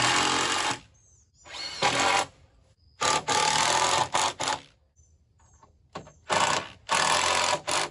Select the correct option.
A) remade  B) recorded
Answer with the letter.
B